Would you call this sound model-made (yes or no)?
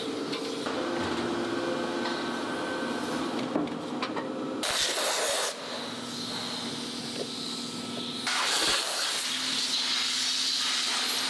no